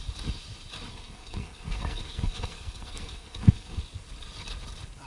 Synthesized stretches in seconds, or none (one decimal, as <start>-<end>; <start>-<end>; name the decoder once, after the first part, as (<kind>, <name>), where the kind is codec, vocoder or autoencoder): 0.9-3.8 (codec, SNAC)